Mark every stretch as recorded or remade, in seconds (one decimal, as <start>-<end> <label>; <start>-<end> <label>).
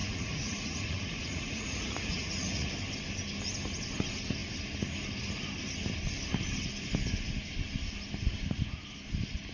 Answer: 0.0-2.7 remade; 2.7-9.5 recorded